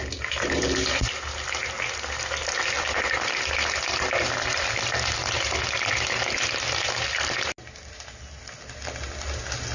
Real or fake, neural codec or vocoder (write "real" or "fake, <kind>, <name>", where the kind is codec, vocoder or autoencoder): real